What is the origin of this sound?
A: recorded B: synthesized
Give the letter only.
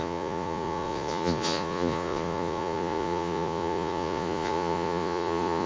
B